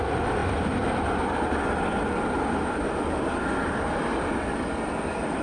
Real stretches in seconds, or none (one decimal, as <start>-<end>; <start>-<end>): 0.0-5.4

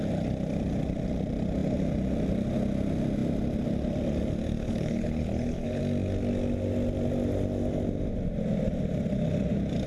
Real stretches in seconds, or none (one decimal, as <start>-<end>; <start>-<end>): 0.0-4.6; 5.8-9.9

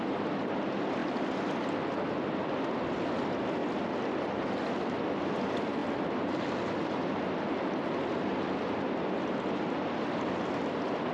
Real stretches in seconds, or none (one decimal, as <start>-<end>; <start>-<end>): 0.0-11.1